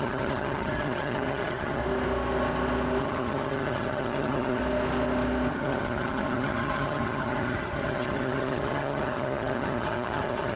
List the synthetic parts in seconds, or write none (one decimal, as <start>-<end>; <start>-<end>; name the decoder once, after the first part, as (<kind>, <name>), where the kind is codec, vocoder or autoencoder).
0.0-1.8 (vocoder, HiFi-GAN); 3.0-4.6; 5.5-10.6